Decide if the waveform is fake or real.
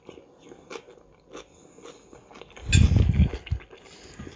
real